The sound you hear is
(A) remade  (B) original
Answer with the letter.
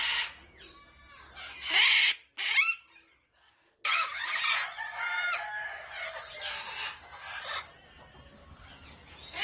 B